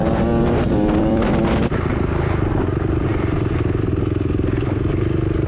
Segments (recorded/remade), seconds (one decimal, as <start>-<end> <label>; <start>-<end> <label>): 0.0-1.0 recorded; 1.0-1.4 remade; 1.4-1.9 recorded; 1.9-5.5 remade